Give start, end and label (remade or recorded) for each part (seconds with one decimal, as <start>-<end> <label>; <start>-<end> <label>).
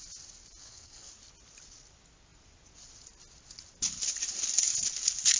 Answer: 0.0-0.6 recorded; 0.6-1.1 remade; 1.1-5.4 recorded